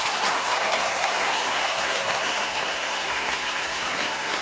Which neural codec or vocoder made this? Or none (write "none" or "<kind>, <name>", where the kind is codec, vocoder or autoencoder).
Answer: codec, SNAC